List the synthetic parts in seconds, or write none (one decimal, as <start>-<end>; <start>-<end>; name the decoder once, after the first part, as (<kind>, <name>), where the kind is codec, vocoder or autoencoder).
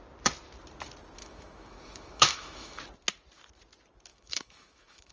1.2-2.8 (autoencoder, DAC-VAE); 4.1-5.1